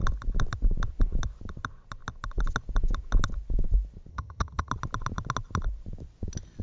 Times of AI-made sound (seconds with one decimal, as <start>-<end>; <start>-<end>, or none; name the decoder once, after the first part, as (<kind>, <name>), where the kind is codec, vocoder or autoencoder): 4.1-4.7 (vocoder, HiFi-GAN)